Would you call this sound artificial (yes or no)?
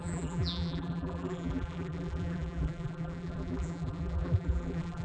yes